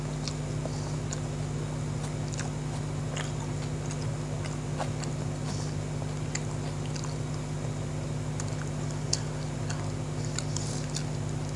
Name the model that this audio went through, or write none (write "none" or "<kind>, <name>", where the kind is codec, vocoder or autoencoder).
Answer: none